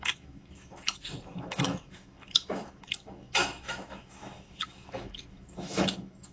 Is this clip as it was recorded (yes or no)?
no